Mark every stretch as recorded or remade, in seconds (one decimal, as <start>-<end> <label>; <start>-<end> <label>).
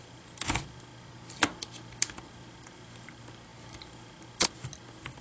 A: 0.0-5.2 recorded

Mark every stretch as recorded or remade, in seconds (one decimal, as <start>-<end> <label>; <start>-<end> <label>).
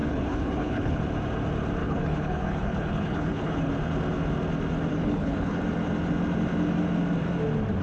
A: 0.0-1.0 remade; 1.0-1.8 recorded; 1.8-3.7 remade; 3.7-4.9 recorded; 4.9-5.6 remade; 5.6-7.8 recorded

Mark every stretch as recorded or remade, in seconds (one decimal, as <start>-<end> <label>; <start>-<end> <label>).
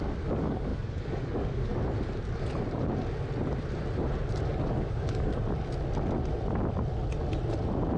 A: 0.0-1.7 remade; 1.7-4.7 recorded; 4.7-5.3 remade; 5.3-8.0 recorded